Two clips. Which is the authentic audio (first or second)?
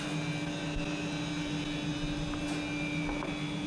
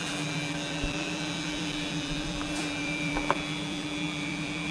first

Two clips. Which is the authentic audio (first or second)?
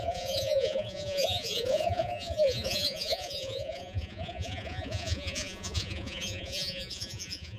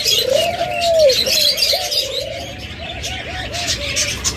second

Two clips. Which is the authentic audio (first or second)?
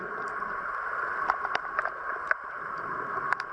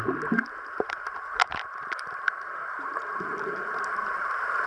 first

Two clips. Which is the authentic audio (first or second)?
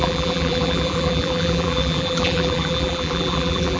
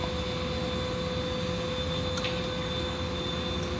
second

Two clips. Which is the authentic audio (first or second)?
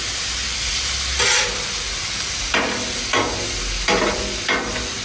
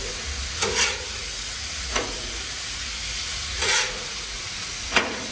first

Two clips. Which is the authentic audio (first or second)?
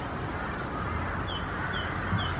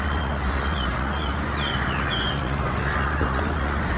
first